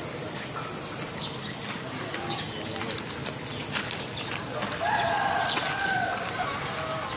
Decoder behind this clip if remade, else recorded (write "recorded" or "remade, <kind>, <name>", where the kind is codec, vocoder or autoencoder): recorded